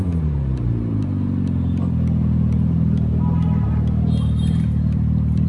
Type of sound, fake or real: real